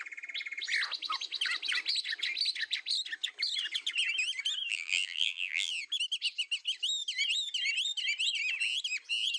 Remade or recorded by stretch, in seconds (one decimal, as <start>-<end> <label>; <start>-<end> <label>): 0.0-4.7 recorded; 4.7-5.7 remade; 5.7-9.4 recorded

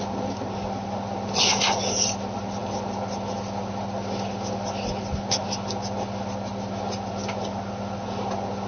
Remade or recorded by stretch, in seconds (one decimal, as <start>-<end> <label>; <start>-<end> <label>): 0.0-8.7 recorded

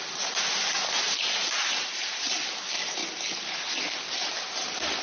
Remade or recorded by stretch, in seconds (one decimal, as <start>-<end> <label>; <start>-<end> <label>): 0.0-5.0 recorded

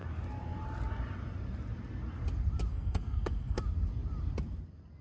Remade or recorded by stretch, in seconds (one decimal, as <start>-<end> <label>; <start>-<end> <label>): 0.0-2.7 recorded; 2.7-3.6 remade; 3.6-5.0 recorded

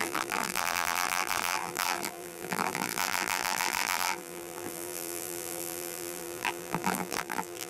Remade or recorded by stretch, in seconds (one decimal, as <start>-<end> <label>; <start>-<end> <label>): 0.0-7.7 remade

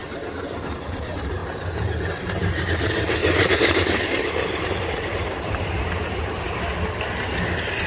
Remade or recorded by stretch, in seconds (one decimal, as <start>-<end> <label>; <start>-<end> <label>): 0.0-1.4 remade; 1.4-2.2 recorded; 2.2-6.7 remade; 6.7-7.9 recorded

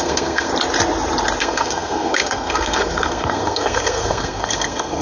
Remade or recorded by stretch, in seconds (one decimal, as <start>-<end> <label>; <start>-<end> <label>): 0.0-0.5 remade; 0.5-1.4 recorded; 1.4-5.0 remade

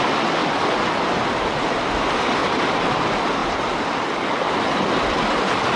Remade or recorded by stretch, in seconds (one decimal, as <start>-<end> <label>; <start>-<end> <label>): 0.0-0.4 recorded; 0.4-1.0 remade; 1.0-2.4 recorded; 2.4-3.0 remade; 3.0-5.8 recorded